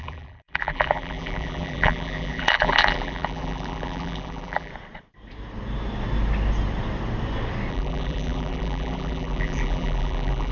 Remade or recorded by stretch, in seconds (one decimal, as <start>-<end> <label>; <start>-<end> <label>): 0.0-4.7 remade; 4.7-7.7 recorded; 7.7-10.5 remade